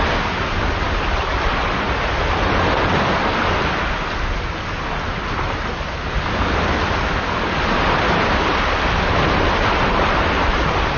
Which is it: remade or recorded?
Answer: recorded